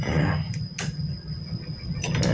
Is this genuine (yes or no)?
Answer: yes